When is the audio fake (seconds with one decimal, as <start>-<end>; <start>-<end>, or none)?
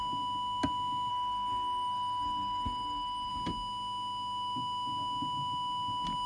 1.1-3.3